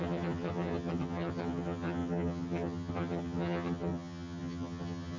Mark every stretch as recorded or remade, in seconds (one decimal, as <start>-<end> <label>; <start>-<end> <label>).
0.0-5.2 remade